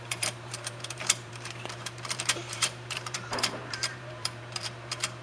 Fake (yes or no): yes